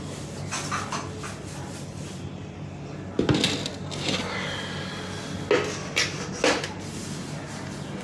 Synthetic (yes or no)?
no